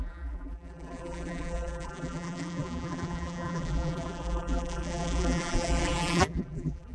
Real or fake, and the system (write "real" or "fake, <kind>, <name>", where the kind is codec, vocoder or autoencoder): fake, vocoder, BigVGAN v2